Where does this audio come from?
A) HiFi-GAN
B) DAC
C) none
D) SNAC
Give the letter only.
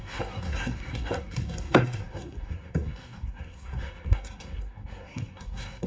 D